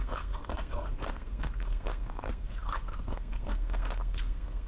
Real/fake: fake